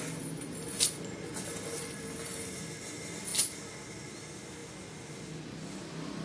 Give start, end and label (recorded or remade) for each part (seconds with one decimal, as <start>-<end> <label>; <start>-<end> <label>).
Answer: 0.0-6.2 recorded